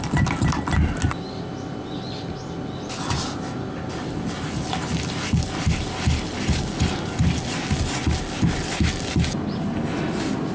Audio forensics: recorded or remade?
recorded